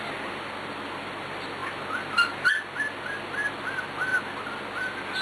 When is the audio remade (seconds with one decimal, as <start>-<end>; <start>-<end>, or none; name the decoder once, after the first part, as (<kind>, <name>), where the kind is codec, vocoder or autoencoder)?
none